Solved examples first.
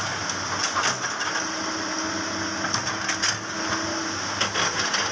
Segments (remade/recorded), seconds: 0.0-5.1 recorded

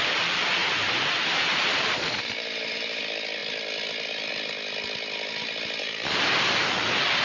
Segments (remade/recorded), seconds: 0.0-0.6 recorded; 0.6-3.0 remade; 3.0-5.8 recorded; 5.8-6.5 remade; 6.5-7.2 recorded

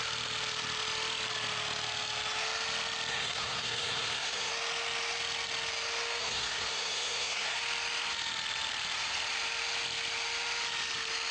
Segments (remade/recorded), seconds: 0.0-3.1 recorded; 3.1-4.5 remade; 4.5-6.2 recorded; 6.2-7.6 remade; 7.6-11.3 recorded